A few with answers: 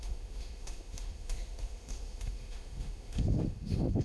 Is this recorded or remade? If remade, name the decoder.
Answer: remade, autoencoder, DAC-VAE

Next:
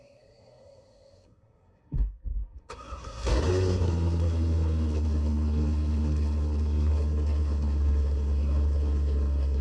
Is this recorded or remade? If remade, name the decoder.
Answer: remade, codec, SNAC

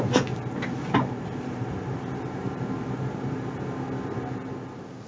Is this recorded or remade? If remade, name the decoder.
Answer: recorded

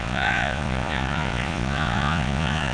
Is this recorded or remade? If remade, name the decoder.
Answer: remade, vocoder, Vocos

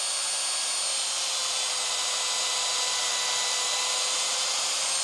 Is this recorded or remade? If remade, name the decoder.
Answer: recorded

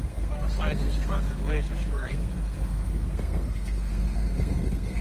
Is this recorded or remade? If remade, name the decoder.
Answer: remade, codec, SNAC